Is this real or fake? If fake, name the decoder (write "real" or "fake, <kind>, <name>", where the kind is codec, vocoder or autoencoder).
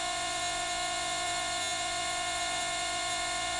fake, vocoder, Vocos